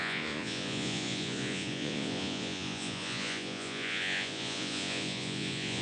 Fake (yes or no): yes